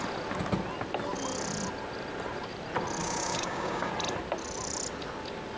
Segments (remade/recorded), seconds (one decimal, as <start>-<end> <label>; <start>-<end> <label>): 0.0-3.0 recorded; 3.0-3.9 remade; 3.9-5.6 recorded